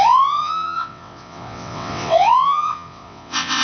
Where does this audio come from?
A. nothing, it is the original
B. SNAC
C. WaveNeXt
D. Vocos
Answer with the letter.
C